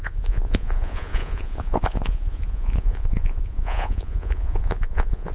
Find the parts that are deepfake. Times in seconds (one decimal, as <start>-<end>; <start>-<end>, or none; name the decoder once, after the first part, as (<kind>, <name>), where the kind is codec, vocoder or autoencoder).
0.0-5.3 (vocoder, Vocos)